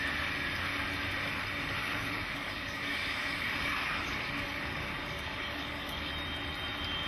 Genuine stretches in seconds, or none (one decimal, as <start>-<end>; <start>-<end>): 0.0-1.8; 6.1-7.1